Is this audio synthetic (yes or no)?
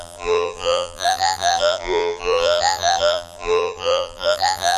yes